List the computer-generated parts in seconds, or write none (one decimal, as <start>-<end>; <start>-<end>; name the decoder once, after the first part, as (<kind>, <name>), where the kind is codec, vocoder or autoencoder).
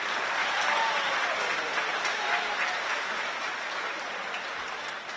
none